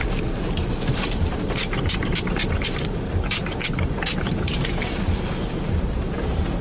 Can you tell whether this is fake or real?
fake